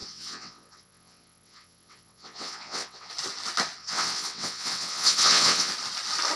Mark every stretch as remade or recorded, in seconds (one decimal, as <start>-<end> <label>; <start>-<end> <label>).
0.0-3.1 remade; 3.1-3.8 recorded; 3.8-5.7 remade; 5.7-6.4 recorded